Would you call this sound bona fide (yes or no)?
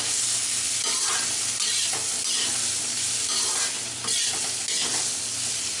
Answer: yes